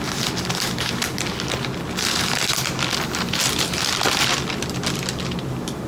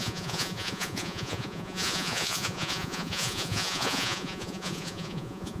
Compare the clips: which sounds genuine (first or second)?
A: first